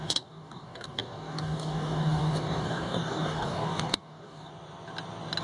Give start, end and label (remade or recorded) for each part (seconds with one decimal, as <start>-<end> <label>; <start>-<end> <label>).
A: 0.0-4.5 remade; 4.5-5.4 recorded